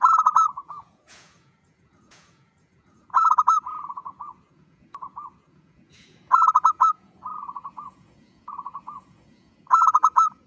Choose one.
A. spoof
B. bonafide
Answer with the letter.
A